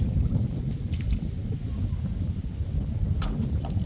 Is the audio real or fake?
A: real